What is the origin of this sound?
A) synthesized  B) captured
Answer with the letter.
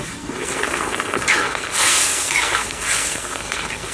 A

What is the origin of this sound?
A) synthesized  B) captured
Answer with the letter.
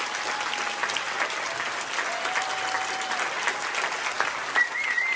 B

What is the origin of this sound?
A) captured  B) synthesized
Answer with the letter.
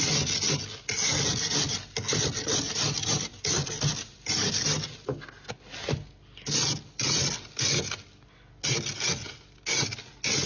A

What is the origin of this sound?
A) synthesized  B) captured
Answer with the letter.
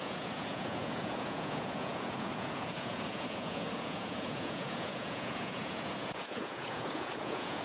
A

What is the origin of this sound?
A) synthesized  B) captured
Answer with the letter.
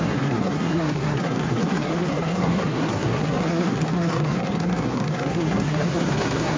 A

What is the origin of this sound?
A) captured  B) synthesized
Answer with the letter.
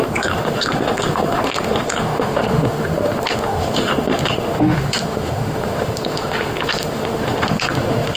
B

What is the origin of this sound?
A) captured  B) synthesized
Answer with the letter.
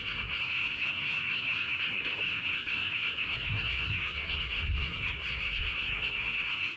B